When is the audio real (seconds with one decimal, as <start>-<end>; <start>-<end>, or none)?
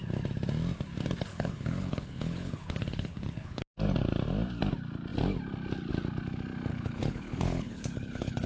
0.0-1.3; 3.6-6.7